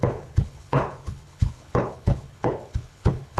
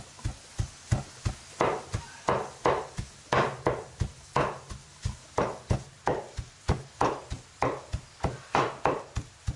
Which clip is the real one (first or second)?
second